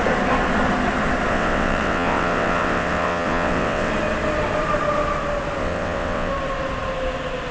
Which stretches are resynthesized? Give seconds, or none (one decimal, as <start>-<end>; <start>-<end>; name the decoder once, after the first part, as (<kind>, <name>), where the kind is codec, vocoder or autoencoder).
1.3-3.9 (vocoder, WaveNeXt); 5.6-6.3